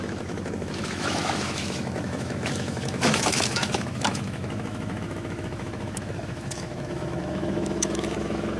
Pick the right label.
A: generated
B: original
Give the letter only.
A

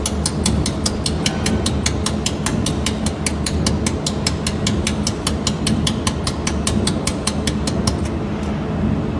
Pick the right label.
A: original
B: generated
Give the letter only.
A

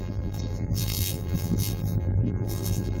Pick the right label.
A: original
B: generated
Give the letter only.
B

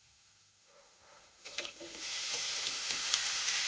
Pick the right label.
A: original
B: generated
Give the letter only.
B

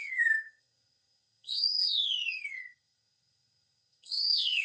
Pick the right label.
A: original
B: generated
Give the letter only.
B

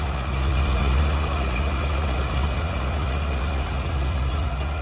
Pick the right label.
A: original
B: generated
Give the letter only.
B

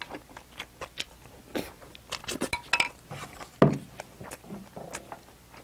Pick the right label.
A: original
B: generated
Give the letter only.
A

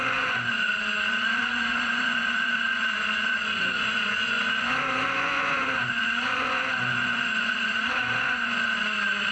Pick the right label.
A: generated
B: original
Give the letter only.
A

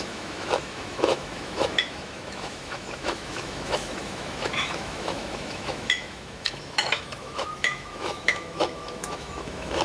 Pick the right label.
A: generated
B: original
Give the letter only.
A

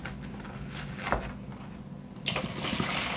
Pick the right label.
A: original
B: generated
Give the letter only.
A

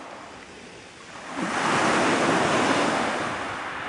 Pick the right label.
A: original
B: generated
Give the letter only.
A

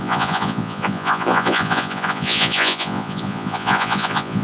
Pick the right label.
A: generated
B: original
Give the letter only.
A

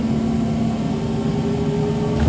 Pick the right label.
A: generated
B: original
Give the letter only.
B